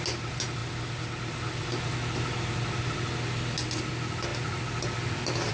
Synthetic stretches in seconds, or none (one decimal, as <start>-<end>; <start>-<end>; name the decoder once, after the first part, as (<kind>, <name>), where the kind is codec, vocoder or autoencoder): none